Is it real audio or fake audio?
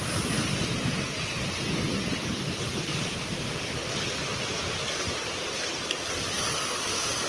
real